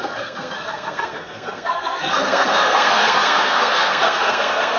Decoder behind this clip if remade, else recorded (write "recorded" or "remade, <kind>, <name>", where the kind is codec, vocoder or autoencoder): remade, codec, SNAC